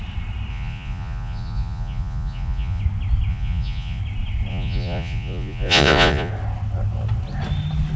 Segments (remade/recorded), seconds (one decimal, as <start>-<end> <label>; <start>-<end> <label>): 0.0-0.5 recorded; 0.5-2.8 remade; 2.8-3.3 recorded; 3.3-4.0 remade; 4.0-4.5 recorded; 4.5-6.3 remade; 6.3-8.0 recorded